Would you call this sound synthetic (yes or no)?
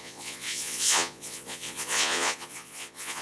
yes